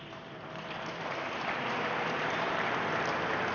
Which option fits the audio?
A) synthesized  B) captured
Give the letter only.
A